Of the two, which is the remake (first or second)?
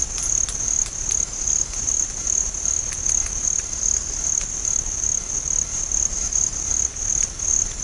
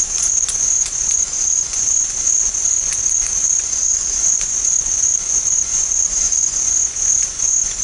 second